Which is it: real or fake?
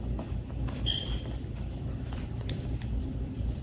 fake